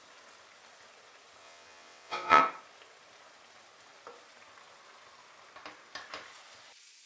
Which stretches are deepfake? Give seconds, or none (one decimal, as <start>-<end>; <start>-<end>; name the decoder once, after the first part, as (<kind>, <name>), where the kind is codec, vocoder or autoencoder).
1.4-2.4 (vocoder, WaveNeXt)